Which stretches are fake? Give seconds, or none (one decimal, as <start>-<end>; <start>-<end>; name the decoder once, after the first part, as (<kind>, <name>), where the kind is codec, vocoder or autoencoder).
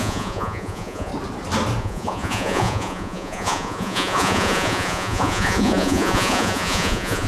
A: 0.0-1.1 (vocoder, Vocos); 1.8-7.3